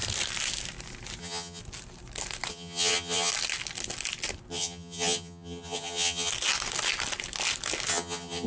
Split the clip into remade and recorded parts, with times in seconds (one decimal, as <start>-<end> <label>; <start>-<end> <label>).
0.0-1.2 recorded; 1.2-1.6 remade; 1.6-2.5 recorded; 2.5-3.3 remade; 3.3-4.5 recorded; 4.5-6.3 remade; 6.3-7.9 recorded; 7.9-8.5 remade